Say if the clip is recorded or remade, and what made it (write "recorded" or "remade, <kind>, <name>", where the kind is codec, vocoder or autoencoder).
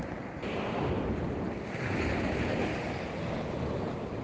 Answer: recorded